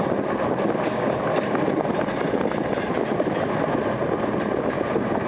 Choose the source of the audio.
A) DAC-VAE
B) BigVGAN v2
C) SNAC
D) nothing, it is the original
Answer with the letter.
D